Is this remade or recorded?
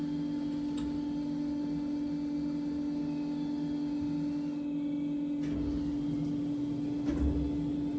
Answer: recorded